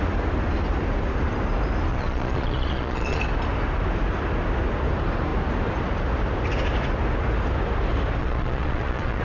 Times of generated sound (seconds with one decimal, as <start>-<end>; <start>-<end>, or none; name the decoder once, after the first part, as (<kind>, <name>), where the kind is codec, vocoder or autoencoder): 1.9-3.2 (vocoder, Vocos); 8.2-9.2